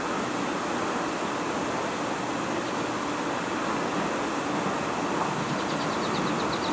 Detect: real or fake real